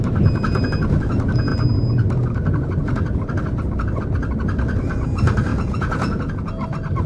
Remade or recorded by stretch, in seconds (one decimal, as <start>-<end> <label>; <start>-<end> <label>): 0.0-5.5 recorded; 5.5-6.3 remade; 6.3-7.1 recorded